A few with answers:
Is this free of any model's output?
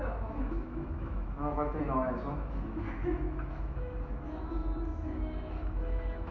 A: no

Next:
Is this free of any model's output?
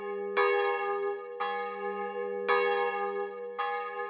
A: yes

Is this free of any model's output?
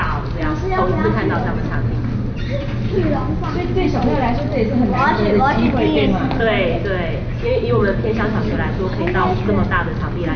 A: yes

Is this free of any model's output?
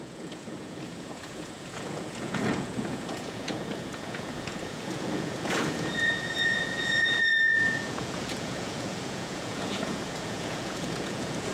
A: no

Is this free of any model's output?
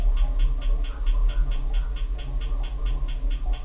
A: yes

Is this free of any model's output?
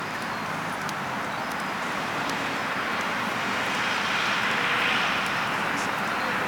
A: yes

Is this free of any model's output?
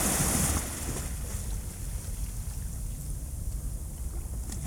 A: yes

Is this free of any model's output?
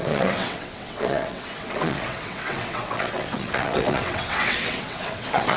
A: no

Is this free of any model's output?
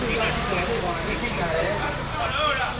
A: yes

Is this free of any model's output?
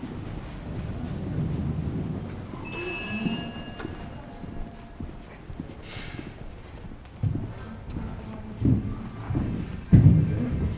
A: yes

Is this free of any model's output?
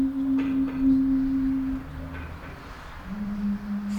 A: yes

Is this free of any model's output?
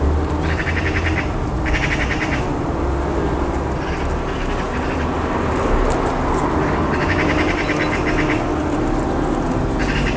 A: yes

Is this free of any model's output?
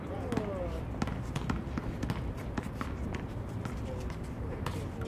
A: yes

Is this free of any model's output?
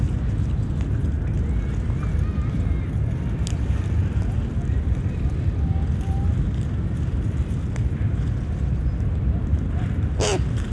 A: yes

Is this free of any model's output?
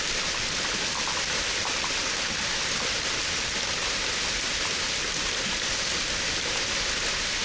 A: yes